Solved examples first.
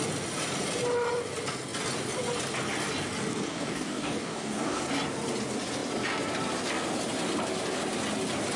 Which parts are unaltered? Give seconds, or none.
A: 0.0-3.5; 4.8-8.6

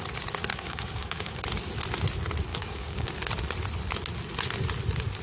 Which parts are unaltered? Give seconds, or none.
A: 0.0-0.5; 1.4-2.5; 3.1-5.2

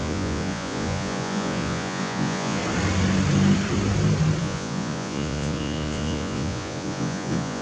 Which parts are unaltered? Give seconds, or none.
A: 2.6-4.4

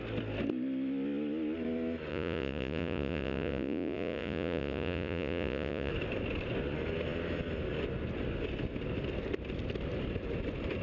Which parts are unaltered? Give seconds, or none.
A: 0.0-2.1; 5.9-10.8

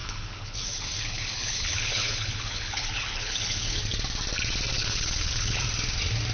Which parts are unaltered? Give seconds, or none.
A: 3.8-4.8; 5.6-6.3

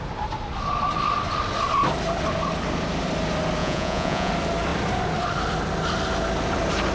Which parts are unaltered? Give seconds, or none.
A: 0.0-3.6; 4.3-6.9

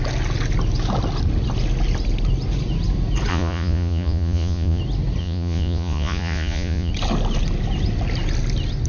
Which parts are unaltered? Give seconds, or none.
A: 0.0-3.3; 4.8-5.2; 6.9-8.9